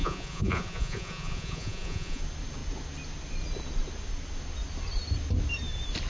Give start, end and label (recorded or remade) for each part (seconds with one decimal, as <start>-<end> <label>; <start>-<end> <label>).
0.0-2.2 remade; 2.2-6.1 recorded